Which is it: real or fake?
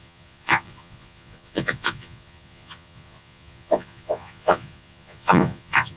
fake